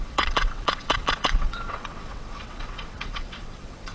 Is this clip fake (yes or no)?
yes